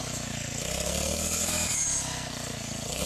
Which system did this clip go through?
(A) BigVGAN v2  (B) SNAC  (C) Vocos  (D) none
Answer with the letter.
B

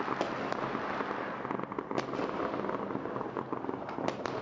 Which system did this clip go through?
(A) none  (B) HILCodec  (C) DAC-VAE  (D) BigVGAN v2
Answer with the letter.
A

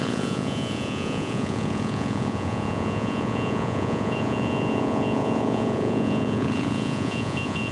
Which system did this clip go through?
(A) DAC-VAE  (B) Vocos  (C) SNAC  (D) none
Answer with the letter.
B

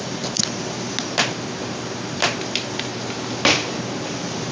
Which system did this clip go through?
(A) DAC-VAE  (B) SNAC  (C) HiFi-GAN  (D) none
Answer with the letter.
D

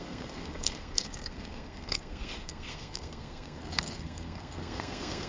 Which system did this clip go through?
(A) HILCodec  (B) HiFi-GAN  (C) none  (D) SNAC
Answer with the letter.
D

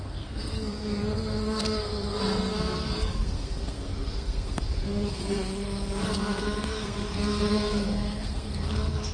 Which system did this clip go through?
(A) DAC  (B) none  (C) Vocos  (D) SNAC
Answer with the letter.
D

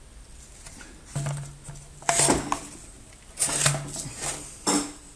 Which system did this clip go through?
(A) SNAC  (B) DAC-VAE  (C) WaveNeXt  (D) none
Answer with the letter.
D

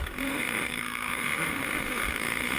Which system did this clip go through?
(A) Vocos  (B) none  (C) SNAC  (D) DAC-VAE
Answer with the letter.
D